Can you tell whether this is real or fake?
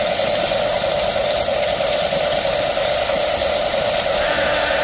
real